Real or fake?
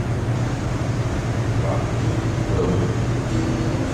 real